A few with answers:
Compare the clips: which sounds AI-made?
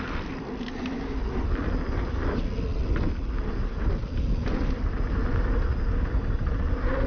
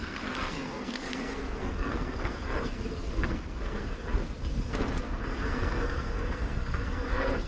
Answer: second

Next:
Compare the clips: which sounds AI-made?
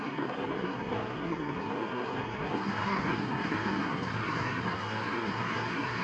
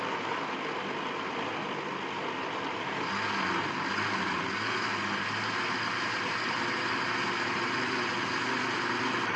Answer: first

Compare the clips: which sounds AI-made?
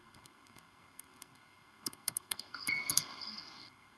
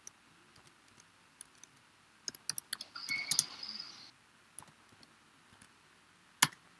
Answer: first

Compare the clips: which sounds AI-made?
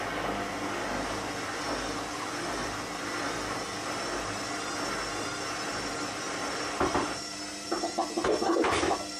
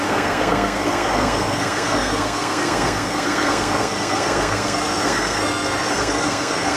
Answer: second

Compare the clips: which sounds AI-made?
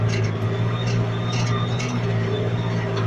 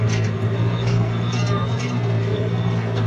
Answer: second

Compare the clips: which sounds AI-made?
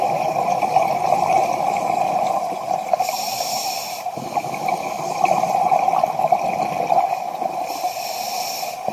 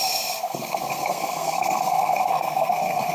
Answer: second